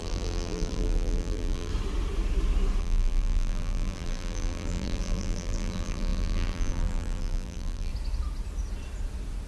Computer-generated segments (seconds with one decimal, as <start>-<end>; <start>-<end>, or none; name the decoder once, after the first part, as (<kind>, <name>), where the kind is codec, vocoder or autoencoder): 0.0-1.7 (vocoder, BigVGAN v2); 2.8-7.9